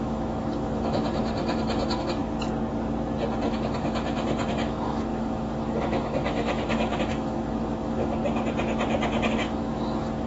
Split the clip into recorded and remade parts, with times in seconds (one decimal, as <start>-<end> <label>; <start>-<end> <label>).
0.0-2.2 remade; 2.2-3.5 recorded; 3.5-8.2 remade; 8.2-9.3 recorded; 9.3-10.3 remade